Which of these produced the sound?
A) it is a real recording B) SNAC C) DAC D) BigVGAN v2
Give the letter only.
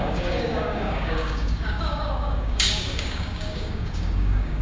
C